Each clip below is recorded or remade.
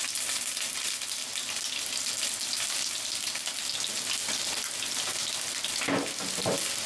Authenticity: recorded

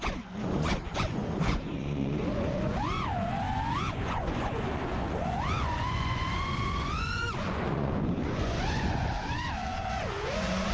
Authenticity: remade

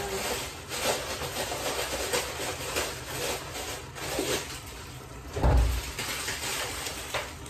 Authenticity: recorded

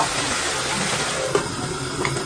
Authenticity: recorded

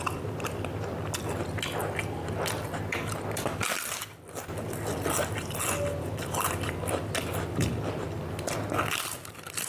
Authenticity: recorded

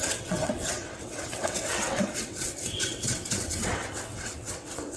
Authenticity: remade